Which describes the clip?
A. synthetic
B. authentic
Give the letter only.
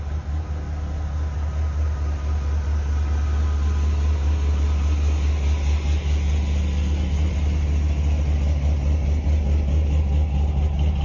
B